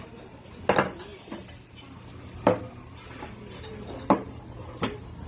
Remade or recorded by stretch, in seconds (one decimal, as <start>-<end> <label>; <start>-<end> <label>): 0.0-5.3 recorded